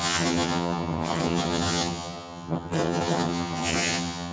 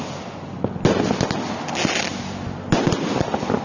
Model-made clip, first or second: first